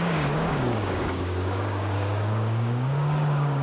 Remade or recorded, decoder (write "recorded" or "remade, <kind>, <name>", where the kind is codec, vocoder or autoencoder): remade, codec, DAC